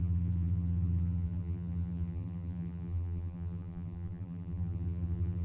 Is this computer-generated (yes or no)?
yes